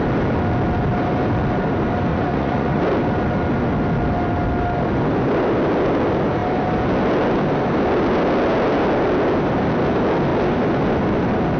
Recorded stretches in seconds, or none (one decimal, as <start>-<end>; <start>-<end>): 0.0-2.1; 2.8-11.6